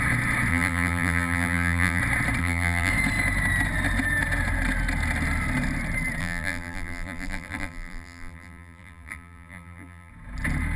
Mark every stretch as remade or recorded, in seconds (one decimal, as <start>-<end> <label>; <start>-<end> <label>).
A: 0.0-0.5 recorded; 0.5-2.0 remade; 2.0-2.4 recorded; 2.4-2.9 remade; 2.9-6.2 recorded; 6.2-10.1 remade; 10.1-10.8 recorded